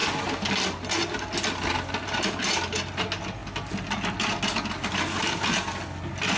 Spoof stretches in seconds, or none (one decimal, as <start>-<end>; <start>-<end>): none